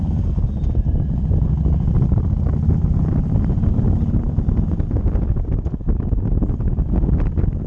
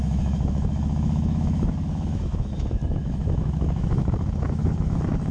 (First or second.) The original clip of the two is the first